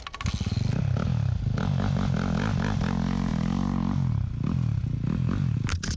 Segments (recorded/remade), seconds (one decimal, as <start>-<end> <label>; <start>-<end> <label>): 0.0-6.0 recorded